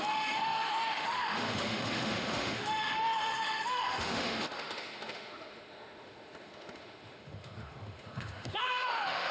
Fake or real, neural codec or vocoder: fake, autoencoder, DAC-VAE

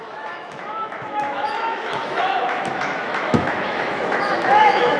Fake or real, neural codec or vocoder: fake, autoencoder, DAC-VAE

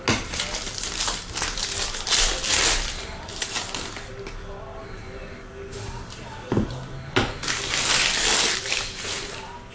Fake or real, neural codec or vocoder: real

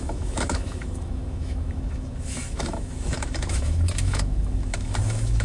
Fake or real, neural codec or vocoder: fake, autoencoder, DAC-VAE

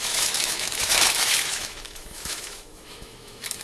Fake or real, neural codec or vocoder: fake, autoencoder, DAC-VAE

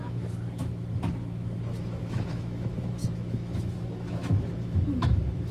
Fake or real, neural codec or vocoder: fake, autoencoder, DAC-VAE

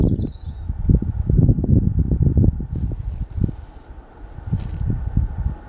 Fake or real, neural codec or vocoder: real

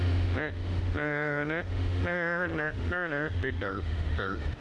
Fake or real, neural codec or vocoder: fake, autoencoder, DAC-VAE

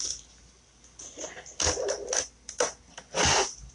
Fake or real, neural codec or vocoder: real